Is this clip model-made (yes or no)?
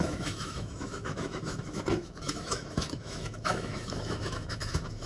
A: yes